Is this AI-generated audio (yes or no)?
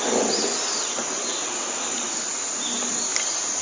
no